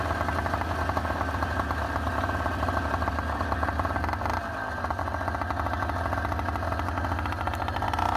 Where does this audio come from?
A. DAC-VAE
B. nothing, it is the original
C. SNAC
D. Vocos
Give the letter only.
B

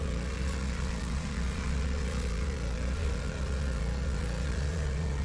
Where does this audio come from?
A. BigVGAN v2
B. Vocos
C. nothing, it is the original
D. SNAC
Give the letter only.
B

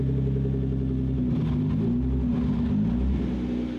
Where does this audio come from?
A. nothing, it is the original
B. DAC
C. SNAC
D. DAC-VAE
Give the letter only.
A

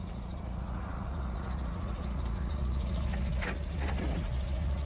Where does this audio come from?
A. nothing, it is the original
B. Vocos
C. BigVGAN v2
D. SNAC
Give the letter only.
B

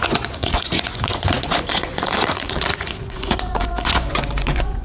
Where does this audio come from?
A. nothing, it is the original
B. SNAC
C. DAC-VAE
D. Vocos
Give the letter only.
D